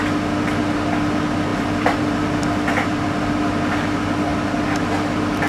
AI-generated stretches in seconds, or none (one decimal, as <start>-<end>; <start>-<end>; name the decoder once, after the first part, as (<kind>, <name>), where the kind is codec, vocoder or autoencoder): 1.5-3.3 (vocoder, BigVGAN v2)